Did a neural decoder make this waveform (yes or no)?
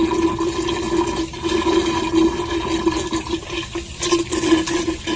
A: no